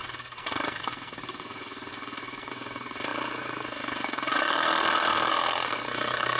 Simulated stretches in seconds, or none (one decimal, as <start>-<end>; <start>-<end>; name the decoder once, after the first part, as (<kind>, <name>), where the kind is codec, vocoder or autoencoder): 0.0-6.4 (codec, SNAC)